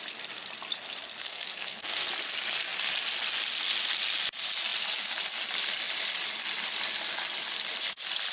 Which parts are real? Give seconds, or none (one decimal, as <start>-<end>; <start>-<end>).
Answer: 0.0-1.2; 2.1-8.3